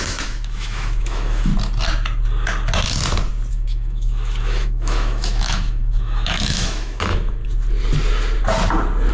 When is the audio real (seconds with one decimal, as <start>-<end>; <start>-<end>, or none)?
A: 1.5-3.5; 7.4-9.1